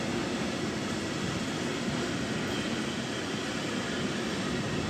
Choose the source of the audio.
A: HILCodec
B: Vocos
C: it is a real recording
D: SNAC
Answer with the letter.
C